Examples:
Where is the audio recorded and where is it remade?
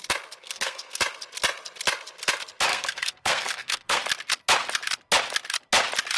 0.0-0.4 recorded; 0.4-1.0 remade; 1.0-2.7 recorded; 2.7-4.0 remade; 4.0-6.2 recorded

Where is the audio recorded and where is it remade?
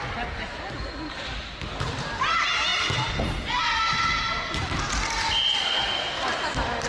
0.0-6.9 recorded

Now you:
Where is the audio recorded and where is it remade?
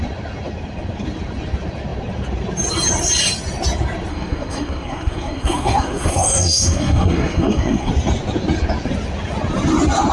0.0-4.1 recorded; 4.1-7.9 remade; 7.9-10.1 recorded